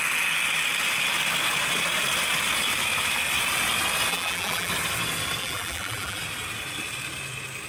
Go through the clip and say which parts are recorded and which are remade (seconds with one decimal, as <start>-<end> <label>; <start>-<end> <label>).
0.0-4.1 recorded; 4.1-4.7 remade; 4.7-5.4 recorded; 5.4-6.2 remade; 6.2-7.7 recorded